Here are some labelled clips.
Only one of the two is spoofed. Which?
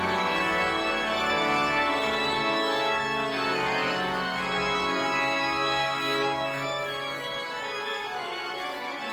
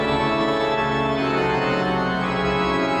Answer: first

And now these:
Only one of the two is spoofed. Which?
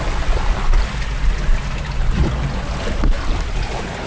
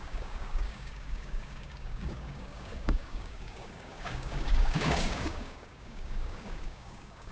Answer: second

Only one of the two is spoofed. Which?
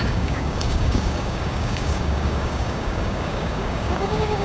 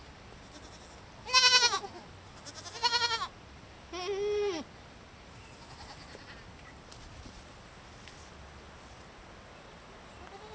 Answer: first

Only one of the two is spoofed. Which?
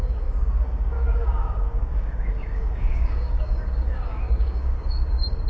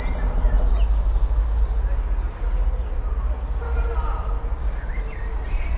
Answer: first